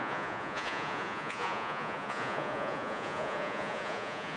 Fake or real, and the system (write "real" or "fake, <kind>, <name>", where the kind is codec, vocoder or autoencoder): fake, vocoder, Vocos